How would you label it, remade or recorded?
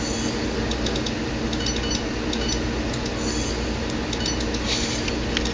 recorded